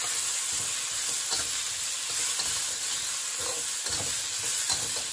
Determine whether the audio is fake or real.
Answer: real